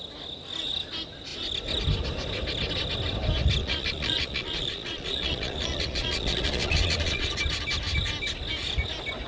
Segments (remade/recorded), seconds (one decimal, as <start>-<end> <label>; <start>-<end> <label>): 0.0-3.6 recorded; 3.6-7.4 remade; 7.4-9.3 recorded